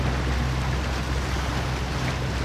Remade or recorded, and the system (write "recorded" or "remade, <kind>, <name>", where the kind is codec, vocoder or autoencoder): recorded